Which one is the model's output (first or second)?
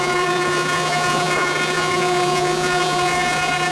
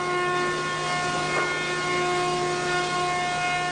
first